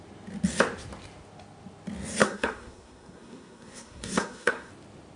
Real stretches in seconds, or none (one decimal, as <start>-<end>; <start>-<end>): 0.0-2.2; 4.7-5.2